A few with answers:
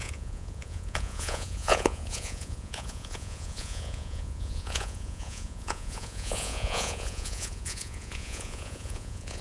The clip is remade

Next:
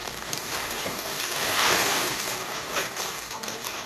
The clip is remade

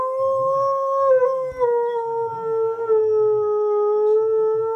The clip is recorded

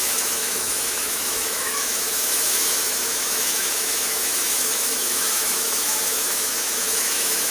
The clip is remade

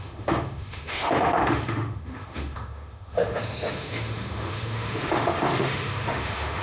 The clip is remade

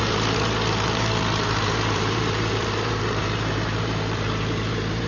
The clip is remade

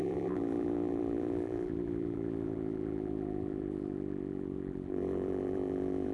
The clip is remade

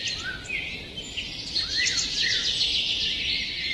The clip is recorded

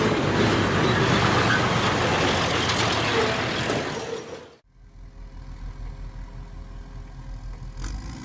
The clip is recorded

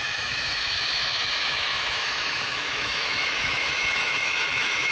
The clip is remade